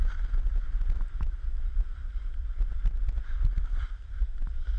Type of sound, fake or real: real